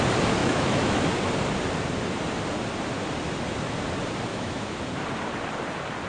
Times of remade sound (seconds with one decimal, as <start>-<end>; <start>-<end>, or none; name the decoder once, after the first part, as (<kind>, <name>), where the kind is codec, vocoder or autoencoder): 0.4-1.1 (autoencoder, DAC-VAE); 4.3-4.8